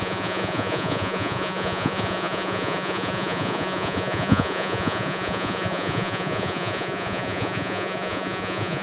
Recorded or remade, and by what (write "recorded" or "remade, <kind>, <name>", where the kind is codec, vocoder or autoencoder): remade, vocoder, Vocos